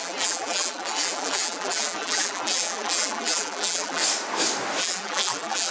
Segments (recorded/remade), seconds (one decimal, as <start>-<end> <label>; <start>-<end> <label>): 0.0-4.0 remade; 4.0-4.8 recorded; 4.8-5.7 remade